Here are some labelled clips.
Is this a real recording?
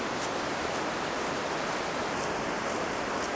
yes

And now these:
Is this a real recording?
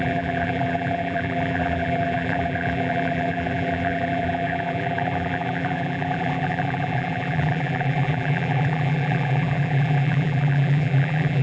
no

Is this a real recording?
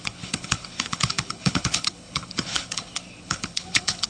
no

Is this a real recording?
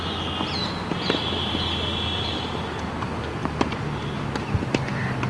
yes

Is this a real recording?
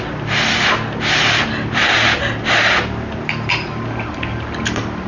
yes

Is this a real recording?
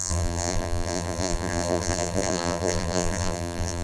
no